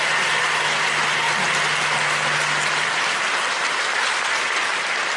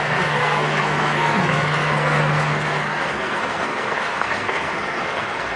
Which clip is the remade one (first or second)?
second